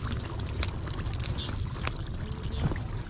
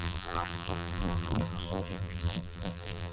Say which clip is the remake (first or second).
second